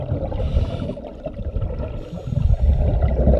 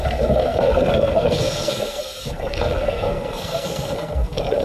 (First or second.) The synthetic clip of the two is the second